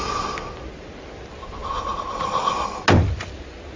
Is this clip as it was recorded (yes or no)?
yes